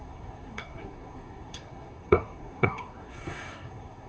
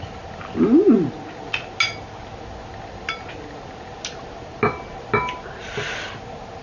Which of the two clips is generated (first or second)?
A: first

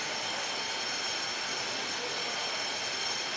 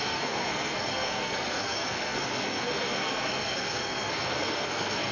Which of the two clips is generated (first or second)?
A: second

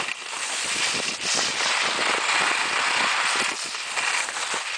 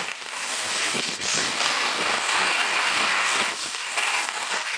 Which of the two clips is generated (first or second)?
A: second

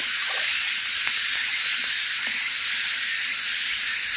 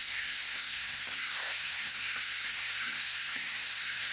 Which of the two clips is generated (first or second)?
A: second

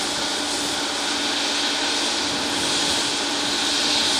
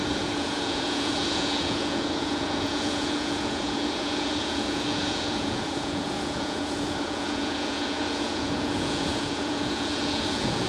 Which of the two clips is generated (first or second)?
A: second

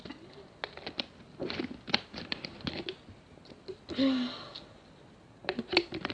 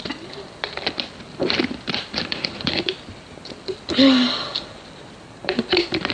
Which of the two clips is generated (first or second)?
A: second